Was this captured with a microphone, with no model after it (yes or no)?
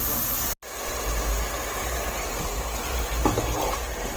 yes